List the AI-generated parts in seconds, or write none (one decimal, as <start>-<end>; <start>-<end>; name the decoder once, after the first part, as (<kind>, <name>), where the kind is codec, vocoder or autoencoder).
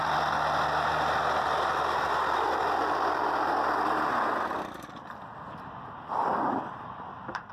2.8-7.5 (vocoder, BigVGAN v2)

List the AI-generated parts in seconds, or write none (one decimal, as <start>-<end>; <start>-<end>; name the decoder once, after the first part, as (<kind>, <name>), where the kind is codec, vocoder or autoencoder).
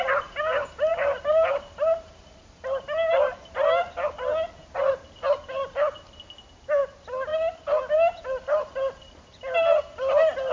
0.9-2.1 (vocoder, BigVGAN v2)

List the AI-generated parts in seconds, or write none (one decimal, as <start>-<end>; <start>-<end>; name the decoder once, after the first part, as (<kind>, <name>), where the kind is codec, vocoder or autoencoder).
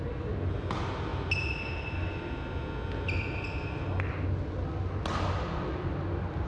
none